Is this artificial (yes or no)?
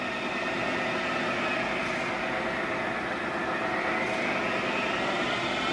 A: no